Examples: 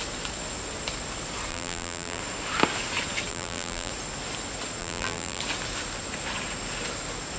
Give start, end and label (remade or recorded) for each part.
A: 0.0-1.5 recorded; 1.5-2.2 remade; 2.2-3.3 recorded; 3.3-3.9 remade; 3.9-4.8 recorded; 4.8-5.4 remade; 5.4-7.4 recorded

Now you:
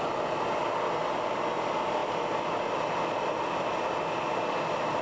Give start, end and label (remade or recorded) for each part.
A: 0.0-5.0 recorded

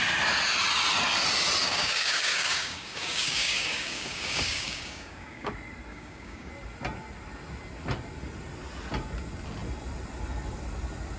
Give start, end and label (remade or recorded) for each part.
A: 0.0-1.6 recorded; 1.6-5.5 remade; 5.5-5.9 recorded; 5.9-6.5 remade; 6.5-11.2 recorded

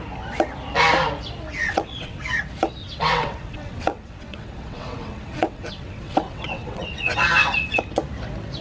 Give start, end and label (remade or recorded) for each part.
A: 0.0-1.6 recorded; 1.6-2.2 remade; 2.2-2.8 recorded; 2.8-7.8 remade; 7.8-8.6 recorded

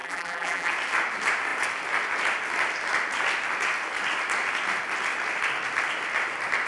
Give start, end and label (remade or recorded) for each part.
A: 0.0-0.7 remade; 0.7-6.7 recorded

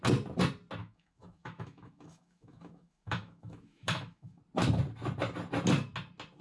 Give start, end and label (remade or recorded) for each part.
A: 0.0-0.8 recorded; 0.8-4.4 remade; 4.4-6.4 recorded